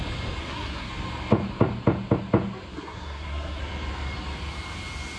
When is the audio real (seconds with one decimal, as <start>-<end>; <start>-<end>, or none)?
0.0-0.4; 0.9-2.7; 3.6-5.2